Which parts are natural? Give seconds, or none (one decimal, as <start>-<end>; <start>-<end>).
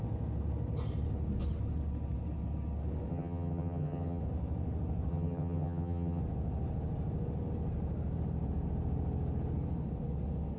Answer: 0.0-3.1; 4.2-5.1; 6.2-10.6